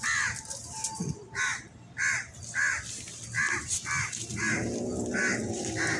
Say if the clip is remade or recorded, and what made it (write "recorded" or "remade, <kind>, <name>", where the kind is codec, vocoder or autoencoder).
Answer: recorded